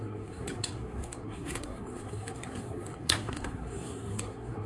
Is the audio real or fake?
fake